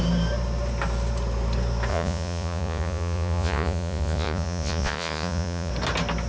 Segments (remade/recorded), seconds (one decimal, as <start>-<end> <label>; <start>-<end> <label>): 0.0-1.9 recorded; 1.9-5.7 remade; 5.7-6.3 recorded